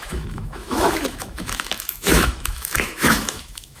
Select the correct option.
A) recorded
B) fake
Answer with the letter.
B